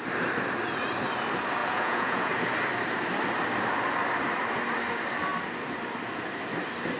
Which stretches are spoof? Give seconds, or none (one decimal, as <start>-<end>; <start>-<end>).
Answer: 1.6-2.3